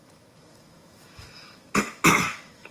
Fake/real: fake